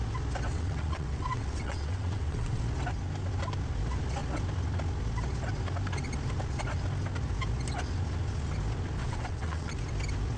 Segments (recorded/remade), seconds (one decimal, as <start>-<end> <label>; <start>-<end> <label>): 0.0-0.5 recorded; 0.5-2.6 remade; 2.6-9.0 recorded; 9.0-9.7 remade; 9.7-10.4 recorded